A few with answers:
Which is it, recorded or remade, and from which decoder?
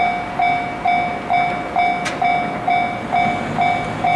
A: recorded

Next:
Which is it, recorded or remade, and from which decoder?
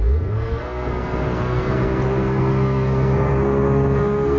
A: remade, codec, SNAC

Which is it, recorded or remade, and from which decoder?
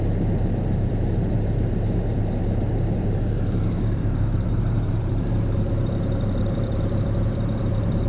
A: remade, vocoder, BigVGAN v2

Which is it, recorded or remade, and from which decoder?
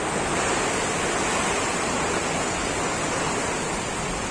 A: recorded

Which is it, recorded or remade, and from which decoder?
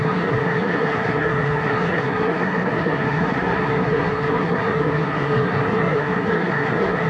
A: remade, codec, SNAC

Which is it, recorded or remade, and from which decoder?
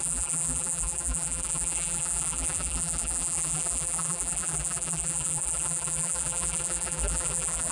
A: remade, vocoder, BigVGAN v2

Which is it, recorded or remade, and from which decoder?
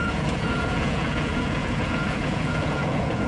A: remade, vocoder, Vocos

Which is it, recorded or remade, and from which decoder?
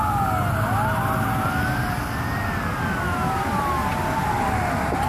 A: recorded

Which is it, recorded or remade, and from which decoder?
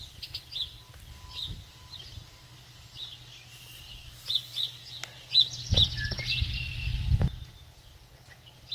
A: recorded